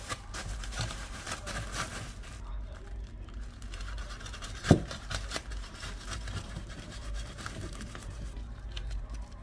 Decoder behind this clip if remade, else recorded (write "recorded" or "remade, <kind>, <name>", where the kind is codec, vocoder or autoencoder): remade, vocoder, BigVGAN v2